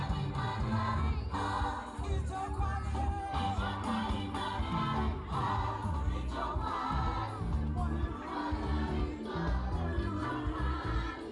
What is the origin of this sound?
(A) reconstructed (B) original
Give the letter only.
B